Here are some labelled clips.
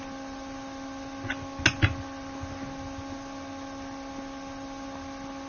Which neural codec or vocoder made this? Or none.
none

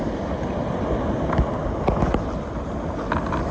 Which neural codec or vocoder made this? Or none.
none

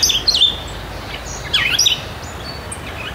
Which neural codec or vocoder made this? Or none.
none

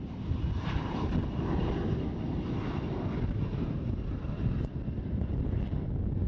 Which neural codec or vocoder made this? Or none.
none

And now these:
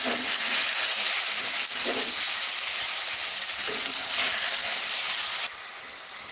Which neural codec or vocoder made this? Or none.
none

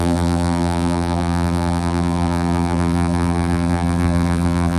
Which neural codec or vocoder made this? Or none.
vocoder, BigVGAN v2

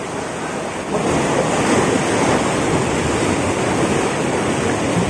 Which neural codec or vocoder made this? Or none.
none